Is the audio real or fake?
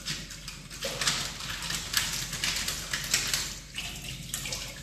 real